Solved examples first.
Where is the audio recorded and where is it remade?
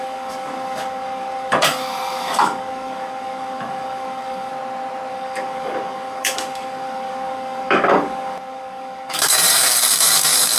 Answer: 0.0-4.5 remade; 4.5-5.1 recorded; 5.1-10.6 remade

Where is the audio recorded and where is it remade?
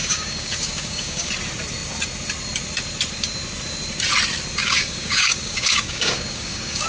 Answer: 0.0-1.3 remade; 1.3-4.6 recorded; 4.6-6.9 remade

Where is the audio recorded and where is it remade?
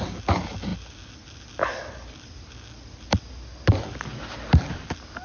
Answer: 0.0-5.2 recorded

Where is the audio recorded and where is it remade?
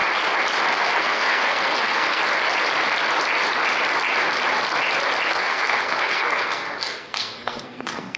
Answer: 0.0-0.7 recorded; 0.7-2.2 remade; 2.2-5.3 recorded; 5.3-8.2 remade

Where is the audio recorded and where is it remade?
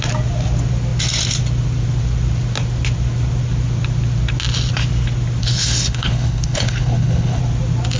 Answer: 0.0-5.4 recorded; 5.4-7.4 remade; 7.4-8.0 recorded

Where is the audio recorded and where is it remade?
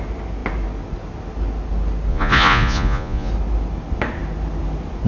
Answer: 0.0-2.1 recorded; 2.1-3.3 remade; 3.3-5.1 recorded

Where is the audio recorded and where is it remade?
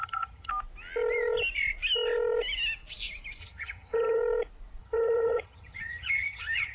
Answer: 0.0-0.5 remade; 0.5-3.4 recorded; 3.4-4.2 remade; 4.2-4.8 recorded; 4.8-6.7 remade